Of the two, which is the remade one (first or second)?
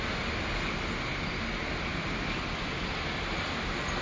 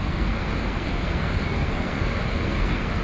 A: second